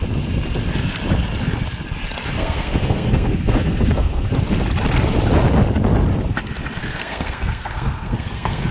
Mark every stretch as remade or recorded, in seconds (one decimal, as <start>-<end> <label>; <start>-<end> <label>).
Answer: 0.0-2.3 recorded; 2.3-4.3 remade; 4.3-6.8 recorded; 6.8-8.7 remade

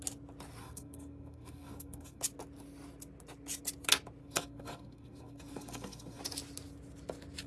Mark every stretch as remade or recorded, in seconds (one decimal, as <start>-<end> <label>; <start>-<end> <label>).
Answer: 0.0-0.6 recorded; 0.6-2.2 remade; 2.2-4.2 recorded; 4.2-6.2 remade; 6.2-7.5 recorded

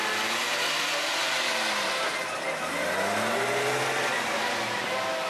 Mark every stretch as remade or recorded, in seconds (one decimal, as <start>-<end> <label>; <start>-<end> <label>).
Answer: 0.0-5.3 recorded

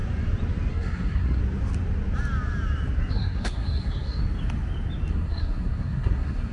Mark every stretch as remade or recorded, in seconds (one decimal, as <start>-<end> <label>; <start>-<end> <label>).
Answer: 0.0-0.7 recorded; 0.7-1.4 remade; 1.4-3.1 recorded; 3.1-4.2 remade; 4.2-5.1 recorded; 5.1-6.5 remade

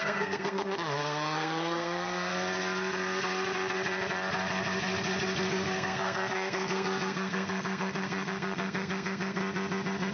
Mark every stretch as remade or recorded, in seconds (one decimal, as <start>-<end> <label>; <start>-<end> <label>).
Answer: 0.0-2.3 remade; 2.3-5.5 recorded; 5.5-9.4 remade; 9.4-10.1 recorded

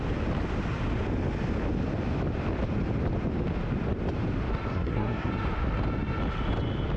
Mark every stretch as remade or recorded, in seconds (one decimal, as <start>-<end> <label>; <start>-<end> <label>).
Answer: 0.0-4.7 recorded; 4.7-5.3 remade; 5.3-7.0 recorded

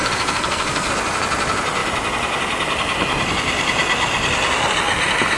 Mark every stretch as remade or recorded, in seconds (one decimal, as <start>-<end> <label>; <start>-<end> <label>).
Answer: 0.0-0.9 remade; 0.9-5.4 recorded

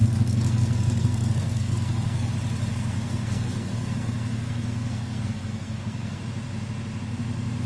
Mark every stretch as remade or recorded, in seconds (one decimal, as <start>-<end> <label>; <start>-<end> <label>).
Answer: 0.0-2.3 remade; 2.3-2.7 recorded; 2.7-6.2 remade; 6.2-7.7 recorded